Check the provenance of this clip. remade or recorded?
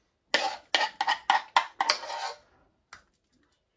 recorded